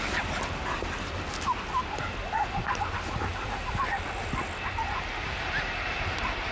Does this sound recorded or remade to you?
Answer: recorded